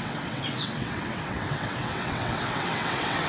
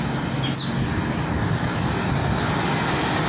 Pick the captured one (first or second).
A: second